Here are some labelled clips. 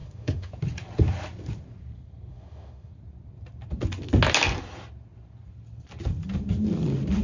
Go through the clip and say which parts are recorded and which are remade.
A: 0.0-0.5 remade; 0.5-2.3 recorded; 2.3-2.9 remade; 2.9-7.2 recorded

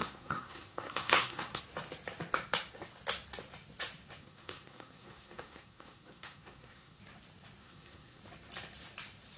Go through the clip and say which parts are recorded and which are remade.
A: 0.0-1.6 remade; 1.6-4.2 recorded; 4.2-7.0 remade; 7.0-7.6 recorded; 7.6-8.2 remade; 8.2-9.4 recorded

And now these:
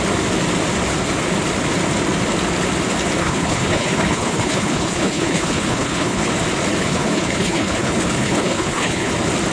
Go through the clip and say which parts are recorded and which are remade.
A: 0.0-3.2 recorded; 3.2-6.3 remade; 6.3-6.8 recorded; 6.8-9.1 remade; 9.1-9.5 recorded

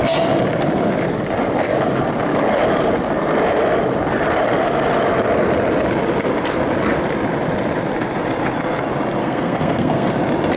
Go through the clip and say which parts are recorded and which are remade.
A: 0.0-9.2 recorded; 9.2-10.1 remade; 10.1-10.6 recorded